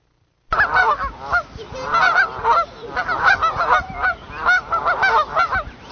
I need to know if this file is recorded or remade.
recorded